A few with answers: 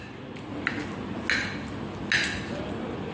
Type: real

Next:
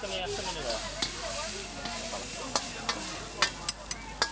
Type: real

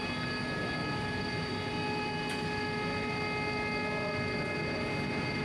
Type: real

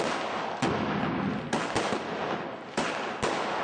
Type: real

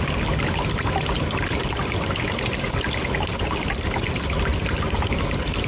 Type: real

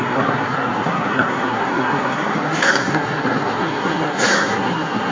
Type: fake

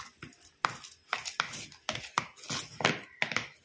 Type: real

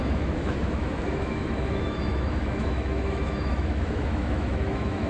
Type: fake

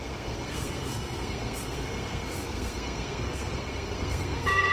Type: fake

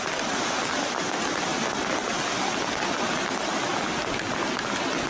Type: real